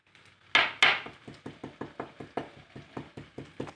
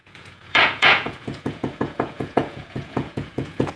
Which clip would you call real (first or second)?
first